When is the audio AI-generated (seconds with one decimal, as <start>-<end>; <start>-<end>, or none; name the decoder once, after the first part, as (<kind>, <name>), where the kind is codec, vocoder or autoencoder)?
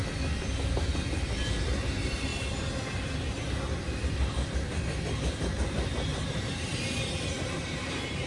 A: 1.4-2.3 (vocoder, BigVGAN v2); 6.4-8.3